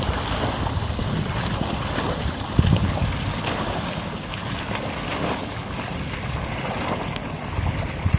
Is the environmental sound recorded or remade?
recorded